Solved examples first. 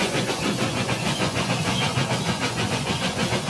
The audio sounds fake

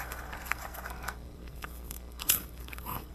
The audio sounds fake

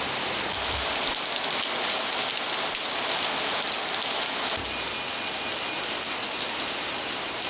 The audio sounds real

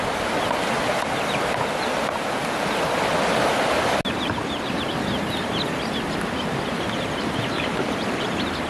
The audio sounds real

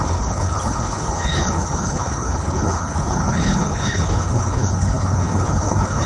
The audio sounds fake